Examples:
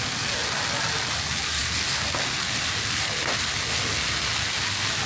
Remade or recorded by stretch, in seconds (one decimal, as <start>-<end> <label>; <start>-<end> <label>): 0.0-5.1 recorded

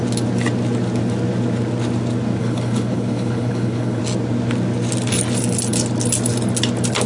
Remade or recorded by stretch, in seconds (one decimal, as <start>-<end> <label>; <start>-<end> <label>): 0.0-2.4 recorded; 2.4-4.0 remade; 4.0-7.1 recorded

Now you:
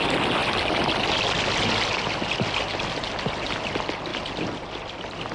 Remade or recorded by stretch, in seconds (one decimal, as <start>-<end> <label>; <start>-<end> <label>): 0.0-5.3 recorded

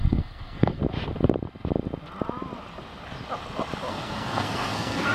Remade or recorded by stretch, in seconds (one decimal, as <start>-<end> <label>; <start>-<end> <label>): 0.0-0.8 remade; 0.8-3.9 recorded; 3.9-5.1 remade

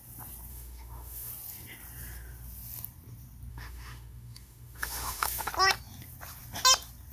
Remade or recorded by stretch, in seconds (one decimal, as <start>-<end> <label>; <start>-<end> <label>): 0.0-0.5 recorded; 0.5-1.3 remade; 1.3-3.5 recorded; 3.5-5.5 remade; 5.5-7.1 recorded

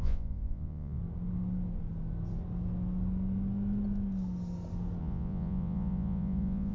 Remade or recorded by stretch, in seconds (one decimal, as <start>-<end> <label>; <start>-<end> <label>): 0.0-1.0 remade; 1.0-5.0 recorded; 5.0-6.7 remade

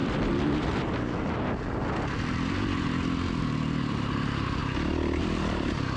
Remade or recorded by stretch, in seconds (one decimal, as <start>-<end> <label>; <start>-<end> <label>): 0.0-3.4 recorded; 3.4-4.6 remade; 4.6-5.2 recorded; 5.2-6.0 remade

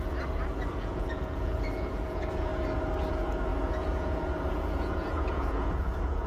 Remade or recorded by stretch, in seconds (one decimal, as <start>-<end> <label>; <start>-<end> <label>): 0.0-2.5 remade; 2.5-3.1 recorded; 3.1-6.3 remade